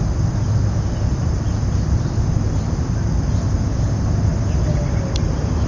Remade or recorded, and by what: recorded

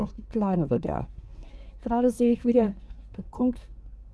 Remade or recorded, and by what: remade, codec, SNAC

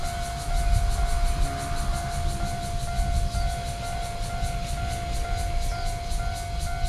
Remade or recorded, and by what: recorded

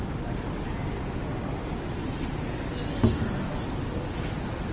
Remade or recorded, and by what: recorded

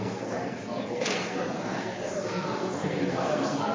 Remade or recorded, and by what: remade, codec, SNAC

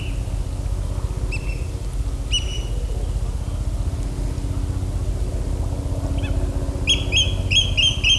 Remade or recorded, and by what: recorded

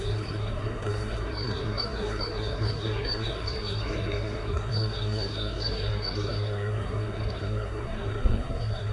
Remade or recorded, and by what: remade, codec, SNAC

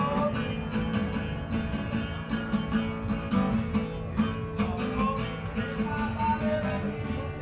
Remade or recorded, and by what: recorded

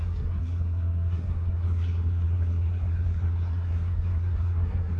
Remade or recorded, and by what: remade, codec, SNAC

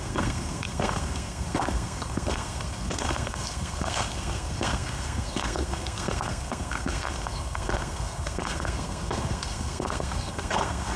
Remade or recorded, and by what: remade, codec, SNAC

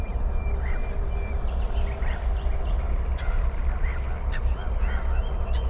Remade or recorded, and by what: recorded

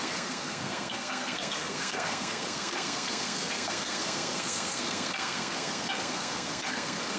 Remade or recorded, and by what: remade, codec, SNAC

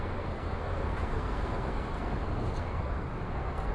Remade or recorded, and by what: remade, codec, SNAC